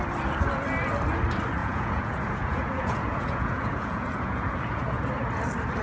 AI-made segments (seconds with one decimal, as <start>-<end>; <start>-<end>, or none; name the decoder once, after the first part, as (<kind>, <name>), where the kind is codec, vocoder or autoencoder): 1.6-5.1 (vocoder, Vocos)